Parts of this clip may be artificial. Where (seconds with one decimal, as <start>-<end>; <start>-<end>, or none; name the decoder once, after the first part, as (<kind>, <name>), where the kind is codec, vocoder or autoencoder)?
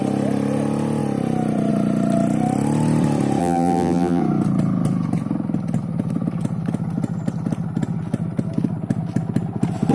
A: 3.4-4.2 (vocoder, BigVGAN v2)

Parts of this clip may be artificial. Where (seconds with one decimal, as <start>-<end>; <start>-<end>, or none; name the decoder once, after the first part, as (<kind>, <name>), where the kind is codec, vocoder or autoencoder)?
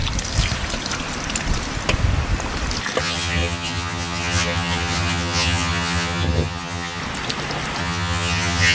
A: 3.0-7.0 (vocoder, HiFi-GAN); 7.8-8.7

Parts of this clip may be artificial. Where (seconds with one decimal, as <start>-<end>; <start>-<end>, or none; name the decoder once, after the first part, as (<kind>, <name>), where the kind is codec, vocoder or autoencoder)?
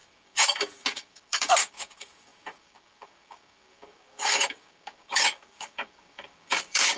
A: 0.0-7.0 (codec, DAC)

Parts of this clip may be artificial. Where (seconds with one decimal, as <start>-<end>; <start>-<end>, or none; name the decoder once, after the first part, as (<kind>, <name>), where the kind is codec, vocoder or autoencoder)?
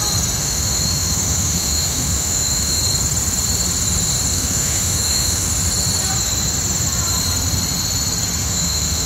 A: 0.4-2.8 (autoencoder, DAC-VAE); 4.3-5.5; 8.4-9.1